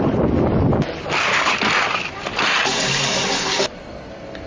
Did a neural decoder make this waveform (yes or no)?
no